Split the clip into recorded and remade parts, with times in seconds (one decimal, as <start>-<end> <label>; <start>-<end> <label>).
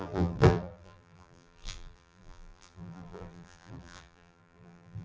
0.0-5.0 remade